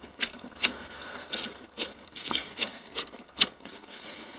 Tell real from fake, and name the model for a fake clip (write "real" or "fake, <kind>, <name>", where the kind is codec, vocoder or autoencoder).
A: fake, codec, SNAC